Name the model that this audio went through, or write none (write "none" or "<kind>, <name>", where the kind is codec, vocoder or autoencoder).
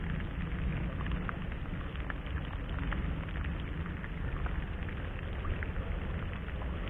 none